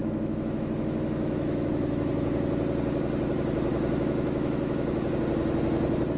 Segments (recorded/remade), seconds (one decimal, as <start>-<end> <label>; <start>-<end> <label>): 0.0-2.1 remade; 2.1-3.7 recorded; 3.7-5.1 remade; 5.1-6.2 recorded